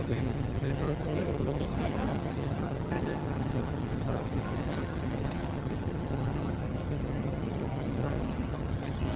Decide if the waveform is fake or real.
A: fake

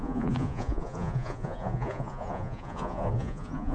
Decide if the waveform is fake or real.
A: fake